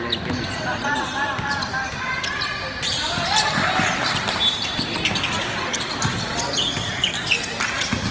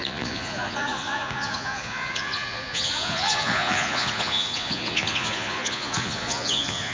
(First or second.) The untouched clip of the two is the first